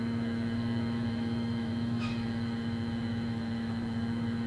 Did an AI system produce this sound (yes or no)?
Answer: yes